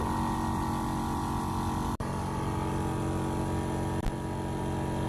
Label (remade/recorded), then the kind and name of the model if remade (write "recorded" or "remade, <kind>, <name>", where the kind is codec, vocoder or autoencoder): recorded